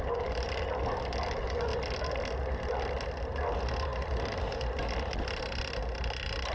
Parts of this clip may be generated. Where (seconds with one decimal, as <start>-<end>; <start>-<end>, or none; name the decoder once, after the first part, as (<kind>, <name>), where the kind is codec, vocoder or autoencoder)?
none